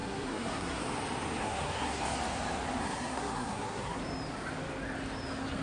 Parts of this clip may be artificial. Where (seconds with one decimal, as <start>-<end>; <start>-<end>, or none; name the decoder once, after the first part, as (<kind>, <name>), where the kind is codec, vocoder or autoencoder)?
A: 0.0-0.8 (codec, SNAC); 1.4-2.0; 2.8-4.0